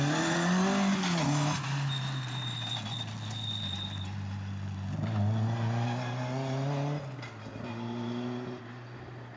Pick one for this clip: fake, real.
real